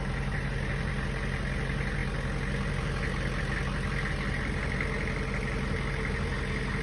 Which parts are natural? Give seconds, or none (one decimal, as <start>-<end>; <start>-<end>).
0.0-6.8